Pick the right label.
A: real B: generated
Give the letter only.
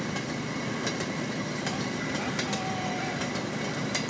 A